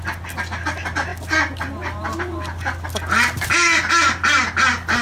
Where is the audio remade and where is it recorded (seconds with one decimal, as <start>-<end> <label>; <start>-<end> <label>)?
0.0-5.0 recorded